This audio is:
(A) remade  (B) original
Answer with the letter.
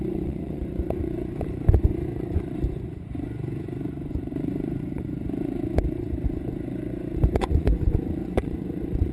A